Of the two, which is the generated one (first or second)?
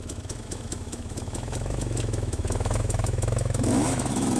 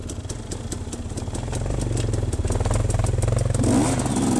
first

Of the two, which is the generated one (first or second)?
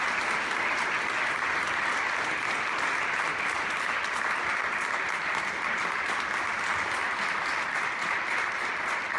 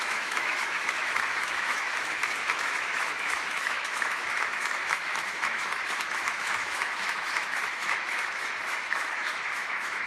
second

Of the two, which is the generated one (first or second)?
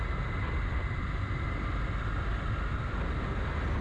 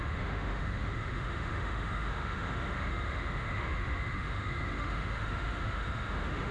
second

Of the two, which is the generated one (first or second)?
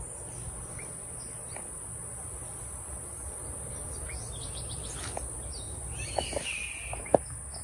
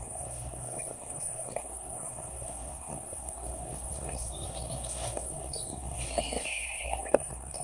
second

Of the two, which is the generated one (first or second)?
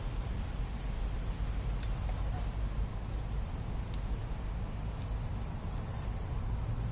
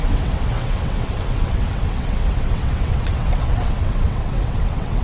second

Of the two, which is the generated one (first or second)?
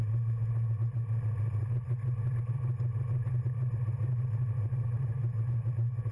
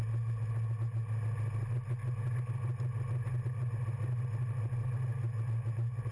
first